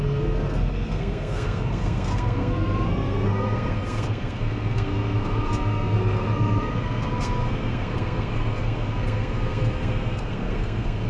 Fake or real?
fake